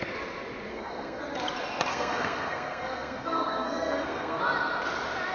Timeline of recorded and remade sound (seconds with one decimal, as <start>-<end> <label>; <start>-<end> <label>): 0.0-0.7 recorded; 0.7-1.2 remade; 1.2-1.9 recorded; 1.9-4.4 remade; 4.4-5.3 recorded

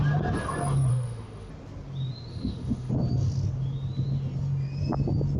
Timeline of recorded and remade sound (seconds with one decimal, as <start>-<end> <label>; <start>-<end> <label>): 0.0-0.9 recorded; 0.9-1.5 remade; 1.5-2.3 recorded; 2.3-2.9 remade; 2.9-5.4 recorded

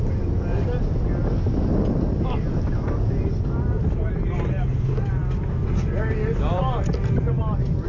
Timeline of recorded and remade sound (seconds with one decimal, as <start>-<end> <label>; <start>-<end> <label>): 0.0-7.9 recorded

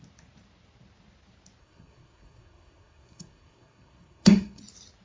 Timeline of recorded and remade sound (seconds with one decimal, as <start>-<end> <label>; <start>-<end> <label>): 0.0-1.6 recorded; 1.6-4.6 remade; 4.6-5.0 recorded